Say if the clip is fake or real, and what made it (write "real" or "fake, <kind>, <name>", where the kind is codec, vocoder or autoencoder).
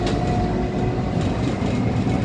real